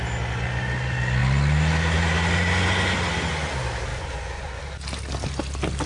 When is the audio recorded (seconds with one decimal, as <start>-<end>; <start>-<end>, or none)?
0.0-3.9; 4.6-5.9